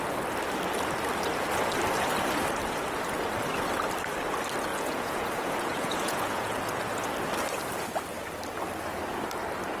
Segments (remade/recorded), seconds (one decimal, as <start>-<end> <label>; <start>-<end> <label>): 0.0-4.7 recorded; 4.7-7.1 remade; 7.1-9.8 recorded